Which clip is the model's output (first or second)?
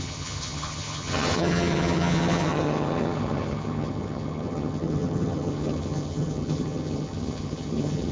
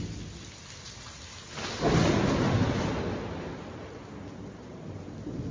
first